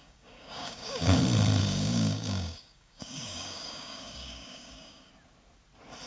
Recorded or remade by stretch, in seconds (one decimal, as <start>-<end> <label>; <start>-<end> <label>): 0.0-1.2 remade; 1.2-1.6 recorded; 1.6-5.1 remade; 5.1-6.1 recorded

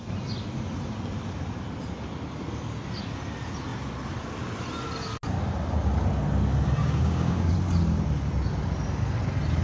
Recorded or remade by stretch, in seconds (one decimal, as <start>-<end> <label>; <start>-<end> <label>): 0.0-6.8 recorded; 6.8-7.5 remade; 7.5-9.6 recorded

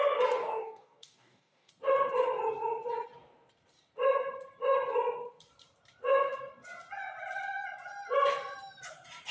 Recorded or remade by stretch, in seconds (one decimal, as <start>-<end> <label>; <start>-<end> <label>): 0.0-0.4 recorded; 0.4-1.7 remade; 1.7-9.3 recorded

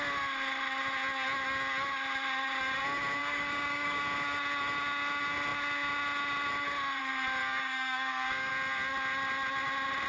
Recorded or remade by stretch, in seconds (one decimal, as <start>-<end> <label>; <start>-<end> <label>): 0.0-3.2 recorded; 3.2-4.0 remade; 4.0-7.4 recorded; 7.4-8.5 remade; 8.5-10.1 recorded